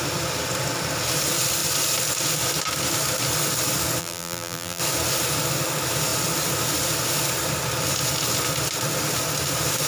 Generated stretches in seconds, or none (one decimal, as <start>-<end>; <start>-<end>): 4.0-4.8